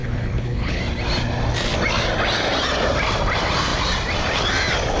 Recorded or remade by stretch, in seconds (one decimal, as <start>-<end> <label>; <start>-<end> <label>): 0.0-0.8 remade; 0.8-5.0 recorded